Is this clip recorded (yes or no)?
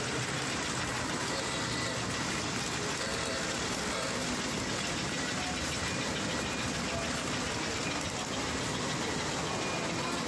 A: yes